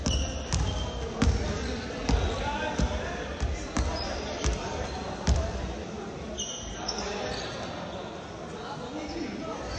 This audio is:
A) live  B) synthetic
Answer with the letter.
A